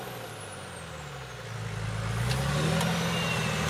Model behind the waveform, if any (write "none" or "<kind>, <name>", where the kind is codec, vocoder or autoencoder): none